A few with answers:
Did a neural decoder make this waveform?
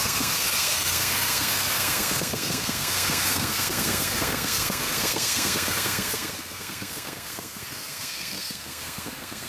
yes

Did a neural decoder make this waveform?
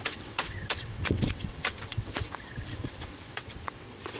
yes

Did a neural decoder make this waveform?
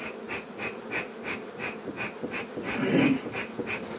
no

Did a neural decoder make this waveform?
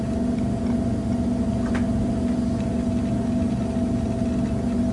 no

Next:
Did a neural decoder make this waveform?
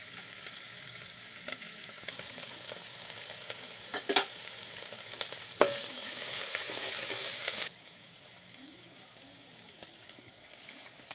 yes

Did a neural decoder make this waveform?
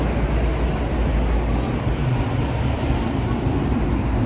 no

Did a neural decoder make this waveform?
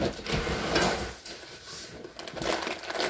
no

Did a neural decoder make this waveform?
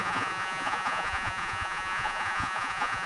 yes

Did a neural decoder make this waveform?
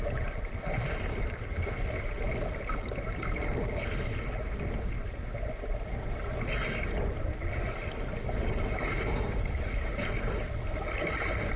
no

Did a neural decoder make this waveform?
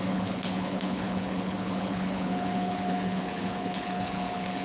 yes